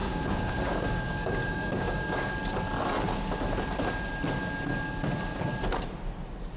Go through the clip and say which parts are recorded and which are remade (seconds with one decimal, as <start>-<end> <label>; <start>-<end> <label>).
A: 0.0-2.3 remade; 2.3-6.6 recorded